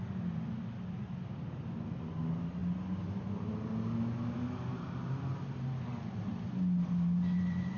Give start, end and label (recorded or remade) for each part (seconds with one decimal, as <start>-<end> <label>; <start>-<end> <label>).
0.0-7.8 recorded